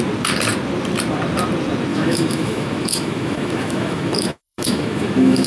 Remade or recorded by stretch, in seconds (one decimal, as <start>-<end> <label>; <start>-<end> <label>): 0.0-1.9 recorded; 1.9-5.5 remade